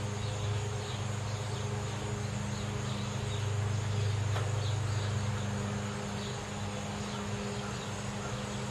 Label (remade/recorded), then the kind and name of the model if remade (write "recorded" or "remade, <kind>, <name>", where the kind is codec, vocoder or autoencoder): recorded